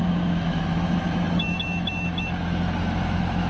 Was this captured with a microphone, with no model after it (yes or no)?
no